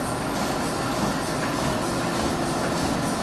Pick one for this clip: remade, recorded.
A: recorded